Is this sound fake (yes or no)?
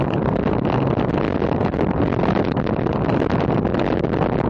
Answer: no